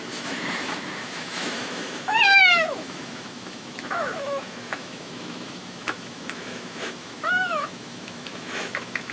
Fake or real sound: fake